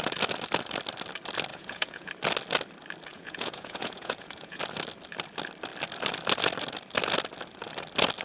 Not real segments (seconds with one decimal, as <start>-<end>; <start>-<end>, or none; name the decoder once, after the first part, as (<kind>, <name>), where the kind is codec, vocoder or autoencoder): 1.5-2.1 (vocoder, Vocos); 3.1-4.6